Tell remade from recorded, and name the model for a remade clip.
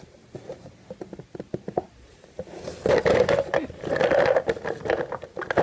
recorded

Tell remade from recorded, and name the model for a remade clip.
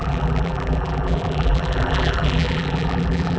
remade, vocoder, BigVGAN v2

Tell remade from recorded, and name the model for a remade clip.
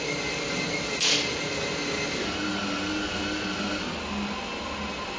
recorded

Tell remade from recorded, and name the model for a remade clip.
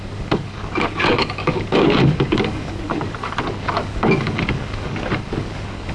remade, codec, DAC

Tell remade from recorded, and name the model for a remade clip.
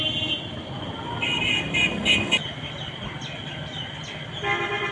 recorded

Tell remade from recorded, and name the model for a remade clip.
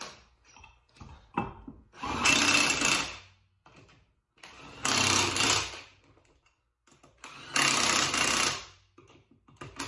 recorded